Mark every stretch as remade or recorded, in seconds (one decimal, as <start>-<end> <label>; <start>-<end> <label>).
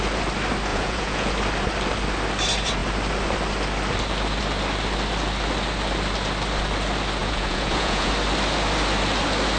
0.0-0.7 recorded; 0.7-1.3 remade; 1.3-7.2 recorded; 7.2-8.1 remade; 8.1-9.6 recorded